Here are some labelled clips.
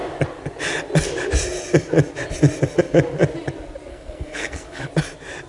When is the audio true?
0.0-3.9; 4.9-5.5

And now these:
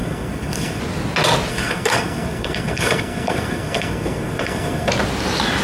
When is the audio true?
0.8-1.5; 4.9-5.6

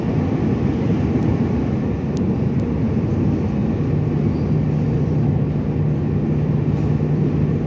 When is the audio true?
0.0-7.7

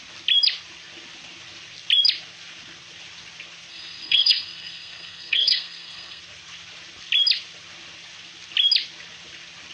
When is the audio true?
0.0-3.7; 6.2-9.7